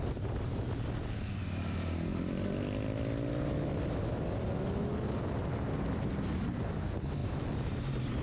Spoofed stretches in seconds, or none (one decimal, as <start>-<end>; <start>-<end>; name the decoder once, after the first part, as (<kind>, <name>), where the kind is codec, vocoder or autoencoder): 7.2-8.2 (vocoder, BigVGAN v2)